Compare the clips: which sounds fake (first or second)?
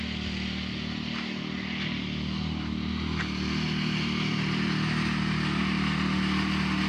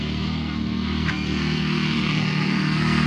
second